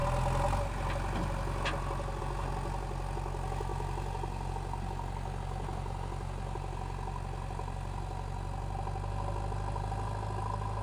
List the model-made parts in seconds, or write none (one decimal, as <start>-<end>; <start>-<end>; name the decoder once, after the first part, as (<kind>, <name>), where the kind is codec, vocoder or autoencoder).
none